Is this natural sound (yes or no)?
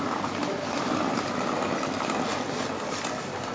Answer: yes